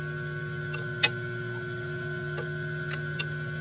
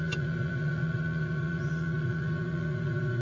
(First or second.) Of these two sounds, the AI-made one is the second